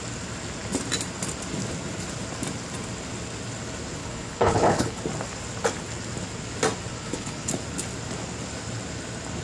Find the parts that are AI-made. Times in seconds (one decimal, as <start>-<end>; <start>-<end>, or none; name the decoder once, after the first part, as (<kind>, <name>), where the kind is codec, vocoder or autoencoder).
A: 4.0-5.0 (codec, HILCodec); 6.9-7.5